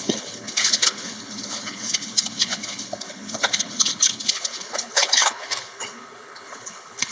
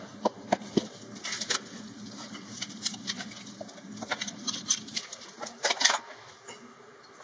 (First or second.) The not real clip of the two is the first